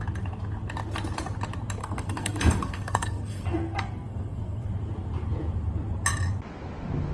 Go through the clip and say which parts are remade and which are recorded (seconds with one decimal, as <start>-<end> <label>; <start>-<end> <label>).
0.0-1.8 recorded; 1.8-4.7 remade; 4.7-7.1 recorded